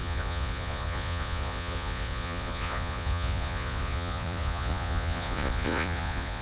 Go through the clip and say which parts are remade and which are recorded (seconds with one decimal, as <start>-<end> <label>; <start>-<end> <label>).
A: 0.0-6.4 remade